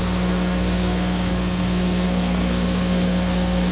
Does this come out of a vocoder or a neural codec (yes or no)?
yes